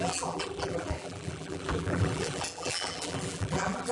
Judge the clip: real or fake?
fake